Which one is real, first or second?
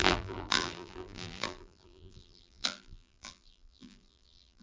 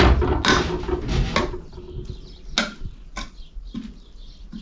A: second